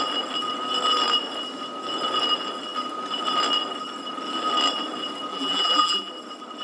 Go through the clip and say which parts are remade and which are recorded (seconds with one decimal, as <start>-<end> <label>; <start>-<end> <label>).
0.0-5.3 recorded; 5.3-6.1 remade; 6.1-6.6 recorded